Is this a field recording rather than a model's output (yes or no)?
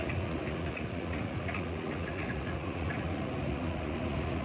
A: no